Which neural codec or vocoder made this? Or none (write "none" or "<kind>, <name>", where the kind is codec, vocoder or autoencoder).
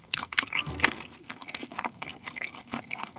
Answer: codec, SNAC